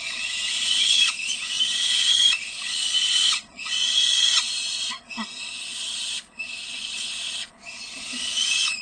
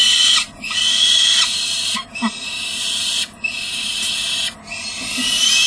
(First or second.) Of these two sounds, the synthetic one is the first